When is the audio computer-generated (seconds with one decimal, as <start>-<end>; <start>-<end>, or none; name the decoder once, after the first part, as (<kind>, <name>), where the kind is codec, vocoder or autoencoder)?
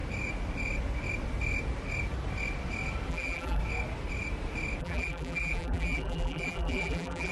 3.1-3.6 (vocoder, BigVGAN v2); 4.8-7.3